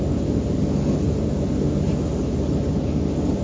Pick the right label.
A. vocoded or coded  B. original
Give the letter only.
B